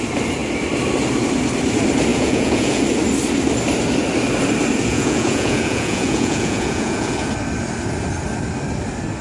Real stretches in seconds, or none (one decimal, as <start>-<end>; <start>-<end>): 0.0-2.1; 2.8-4.9; 7.3-9.2